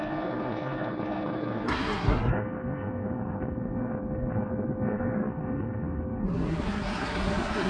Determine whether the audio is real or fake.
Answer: fake